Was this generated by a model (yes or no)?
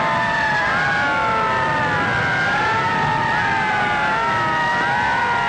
no